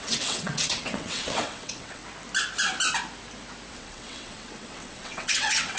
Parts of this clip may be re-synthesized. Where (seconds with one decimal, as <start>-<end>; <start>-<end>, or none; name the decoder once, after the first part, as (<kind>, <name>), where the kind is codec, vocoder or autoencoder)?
0.0-2.0 (vocoder, WaveNeXt); 3.7-5.8